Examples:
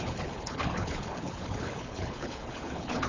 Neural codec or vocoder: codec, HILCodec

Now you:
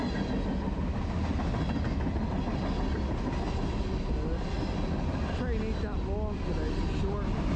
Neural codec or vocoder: none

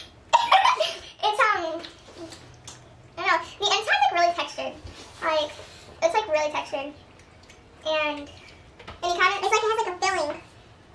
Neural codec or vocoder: none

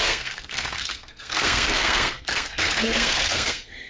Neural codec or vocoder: codec, SNAC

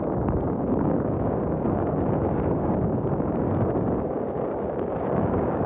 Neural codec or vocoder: codec, DAC